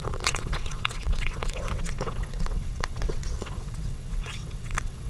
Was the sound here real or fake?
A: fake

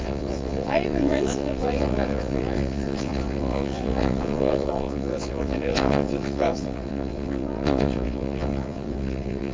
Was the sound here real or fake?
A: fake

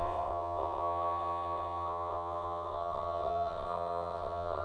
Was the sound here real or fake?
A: fake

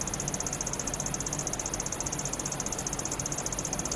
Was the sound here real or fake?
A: real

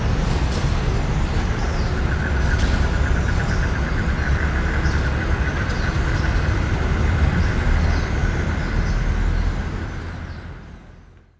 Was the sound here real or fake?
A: real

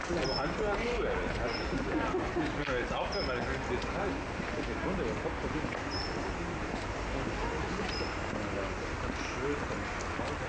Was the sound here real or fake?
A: real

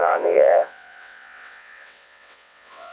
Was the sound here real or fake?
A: fake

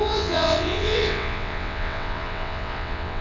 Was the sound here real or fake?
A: fake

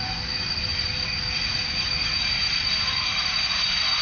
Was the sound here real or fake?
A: real